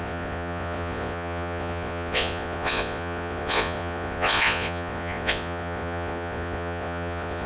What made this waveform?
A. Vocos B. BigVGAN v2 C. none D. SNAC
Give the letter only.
A